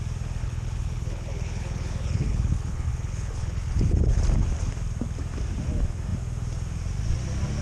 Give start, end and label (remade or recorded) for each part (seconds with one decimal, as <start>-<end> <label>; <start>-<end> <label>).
0.0-0.4 recorded; 0.4-4.2 remade; 4.2-7.6 recorded